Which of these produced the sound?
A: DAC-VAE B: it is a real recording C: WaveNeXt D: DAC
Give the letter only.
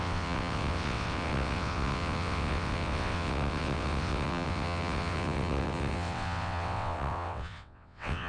C